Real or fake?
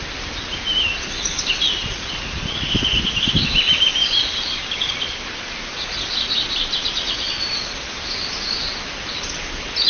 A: real